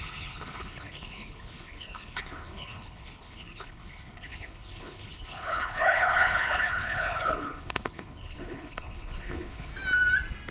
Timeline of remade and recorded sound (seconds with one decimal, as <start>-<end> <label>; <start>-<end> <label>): 0.0-9.7 remade; 9.7-10.5 recorded

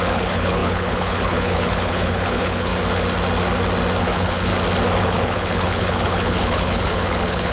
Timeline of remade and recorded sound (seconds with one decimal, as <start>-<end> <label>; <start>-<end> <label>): 0.0-2.7 remade; 2.7-4.0 recorded; 4.0-4.5 remade; 4.5-5.0 recorded; 5.0-7.5 remade

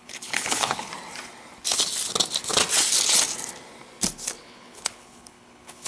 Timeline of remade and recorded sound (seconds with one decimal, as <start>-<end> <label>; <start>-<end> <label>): 0.0-0.9 remade; 0.9-4.4 recorded; 4.4-5.9 remade

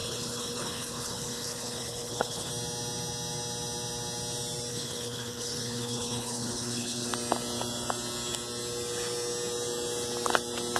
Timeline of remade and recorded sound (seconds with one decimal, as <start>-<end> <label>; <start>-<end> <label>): 0.0-2.5 remade; 2.5-4.7 recorded; 4.7-7.1 remade; 7.1-10.8 recorded

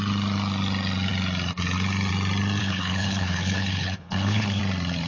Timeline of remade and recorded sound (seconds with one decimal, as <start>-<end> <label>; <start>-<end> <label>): 0.0-2.6 recorded; 2.6-4.6 remade; 4.6-5.1 recorded

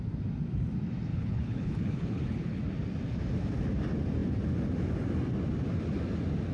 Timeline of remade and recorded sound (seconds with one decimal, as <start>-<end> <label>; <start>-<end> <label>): 0.0-1.1 recorded; 1.1-2.6 remade; 2.6-6.5 recorded